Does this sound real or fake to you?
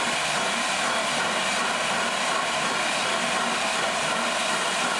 fake